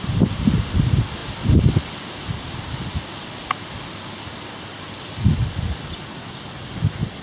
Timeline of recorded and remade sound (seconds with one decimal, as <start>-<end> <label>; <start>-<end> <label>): 0.0-7.2 recorded